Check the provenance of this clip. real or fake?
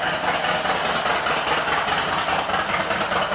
real